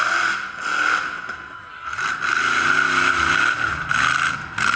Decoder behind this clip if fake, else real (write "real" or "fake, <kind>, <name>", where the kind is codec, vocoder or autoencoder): real